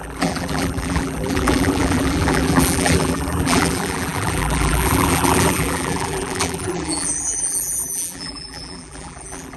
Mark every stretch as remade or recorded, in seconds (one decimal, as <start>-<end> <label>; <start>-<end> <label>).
0.0-9.6 remade